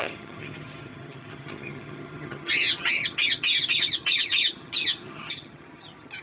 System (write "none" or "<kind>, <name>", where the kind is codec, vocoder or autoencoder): vocoder, HiFi-GAN